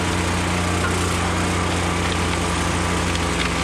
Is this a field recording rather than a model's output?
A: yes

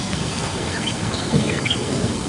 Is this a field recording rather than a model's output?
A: no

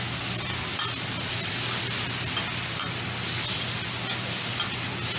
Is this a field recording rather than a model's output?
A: yes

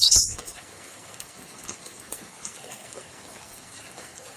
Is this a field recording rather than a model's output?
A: no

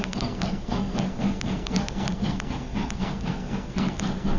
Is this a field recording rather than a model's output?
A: no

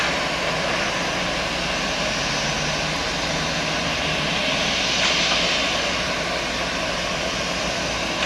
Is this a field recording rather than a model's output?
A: yes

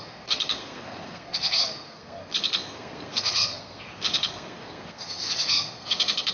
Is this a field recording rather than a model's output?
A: no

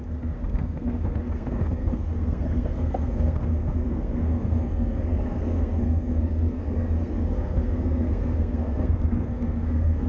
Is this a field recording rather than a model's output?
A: no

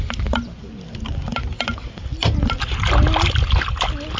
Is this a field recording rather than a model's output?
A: yes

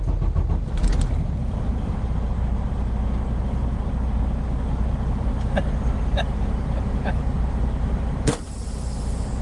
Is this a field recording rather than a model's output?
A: yes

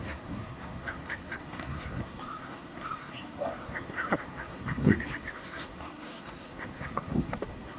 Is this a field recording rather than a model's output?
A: no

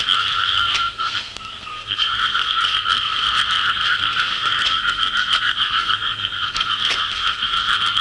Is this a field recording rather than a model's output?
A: no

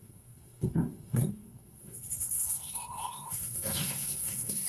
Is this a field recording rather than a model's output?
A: no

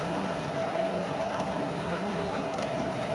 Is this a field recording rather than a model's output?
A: no